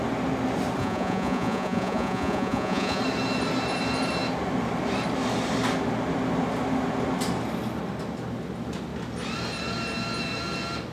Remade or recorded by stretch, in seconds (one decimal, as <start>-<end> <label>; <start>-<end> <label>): 0.0-0.8 recorded; 0.8-3.0 remade; 3.0-10.9 recorded